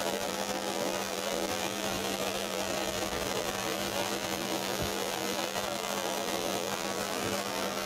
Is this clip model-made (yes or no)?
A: yes